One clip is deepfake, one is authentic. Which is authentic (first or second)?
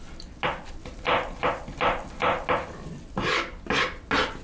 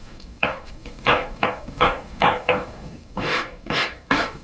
first